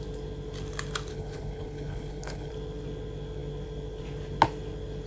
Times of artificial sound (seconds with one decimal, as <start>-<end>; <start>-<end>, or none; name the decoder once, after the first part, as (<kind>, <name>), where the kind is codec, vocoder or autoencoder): 1.1-2.5 (codec, HILCodec)